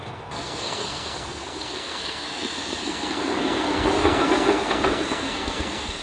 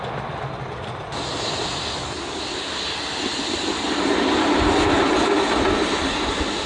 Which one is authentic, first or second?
second